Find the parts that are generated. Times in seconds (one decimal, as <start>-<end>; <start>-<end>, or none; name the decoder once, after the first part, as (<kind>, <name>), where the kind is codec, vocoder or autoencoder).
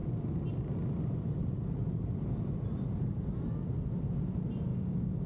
4.7-5.3 (codec, DAC)